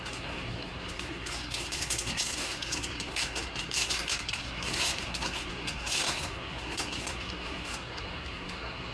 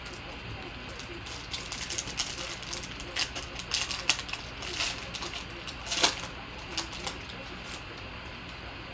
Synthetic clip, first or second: first